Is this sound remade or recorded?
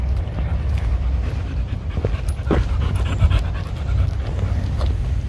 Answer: recorded